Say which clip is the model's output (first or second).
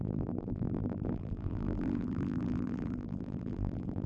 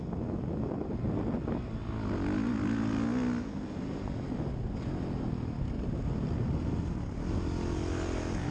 first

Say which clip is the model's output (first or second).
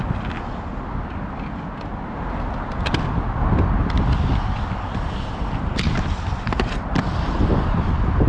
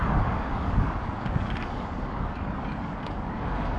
second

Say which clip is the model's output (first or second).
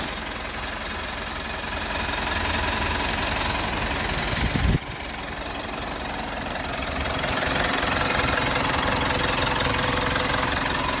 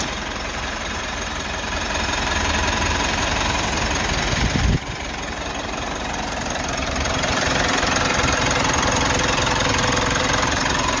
second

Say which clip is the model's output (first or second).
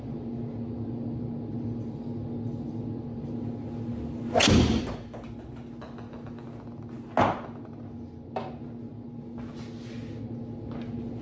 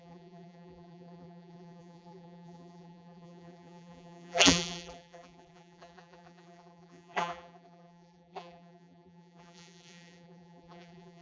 second